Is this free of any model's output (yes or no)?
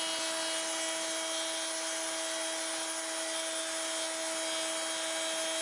yes